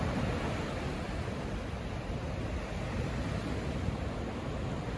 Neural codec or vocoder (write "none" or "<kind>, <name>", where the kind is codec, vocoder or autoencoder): none